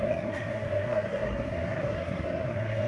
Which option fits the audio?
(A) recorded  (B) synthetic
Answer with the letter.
B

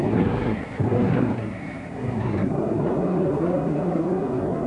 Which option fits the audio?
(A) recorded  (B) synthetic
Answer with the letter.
B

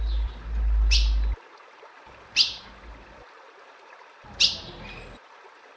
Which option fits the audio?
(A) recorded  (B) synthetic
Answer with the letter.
A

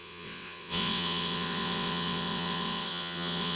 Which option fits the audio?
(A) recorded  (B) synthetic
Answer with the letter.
B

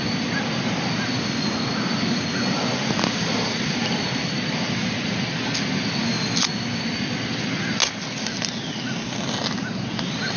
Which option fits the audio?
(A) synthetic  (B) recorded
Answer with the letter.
B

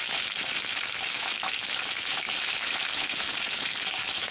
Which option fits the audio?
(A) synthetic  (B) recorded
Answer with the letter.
A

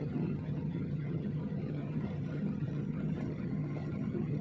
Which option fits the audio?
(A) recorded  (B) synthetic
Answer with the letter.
B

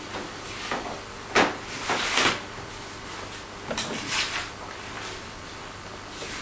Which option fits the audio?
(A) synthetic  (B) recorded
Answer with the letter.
B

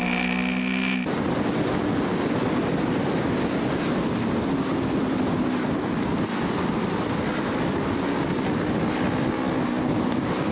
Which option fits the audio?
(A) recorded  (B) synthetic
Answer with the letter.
A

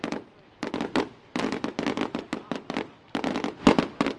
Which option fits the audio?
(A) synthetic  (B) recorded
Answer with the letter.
B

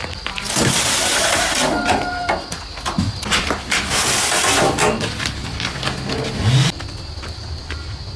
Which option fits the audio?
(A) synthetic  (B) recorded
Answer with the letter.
B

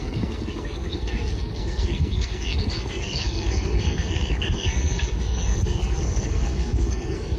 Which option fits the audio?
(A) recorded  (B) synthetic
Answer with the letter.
B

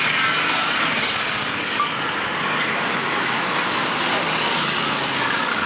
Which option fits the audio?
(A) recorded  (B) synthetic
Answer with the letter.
B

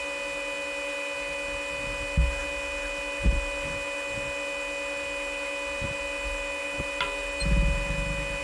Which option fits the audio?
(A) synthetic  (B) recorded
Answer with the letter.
B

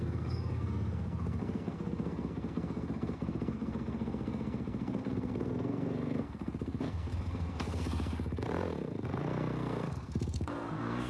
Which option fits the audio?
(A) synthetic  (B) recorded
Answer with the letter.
A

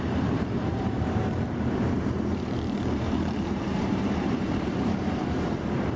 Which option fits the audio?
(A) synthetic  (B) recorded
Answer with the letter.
A